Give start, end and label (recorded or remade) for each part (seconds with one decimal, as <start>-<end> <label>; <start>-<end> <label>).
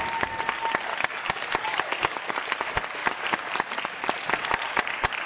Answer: 0.0-0.9 recorded; 0.9-2.3 remade; 2.3-5.3 recorded